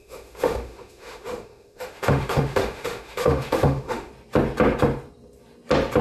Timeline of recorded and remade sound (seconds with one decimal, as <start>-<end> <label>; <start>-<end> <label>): 0.0-4.1 remade; 4.1-6.0 recorded